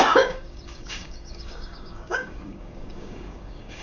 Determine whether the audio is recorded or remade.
remade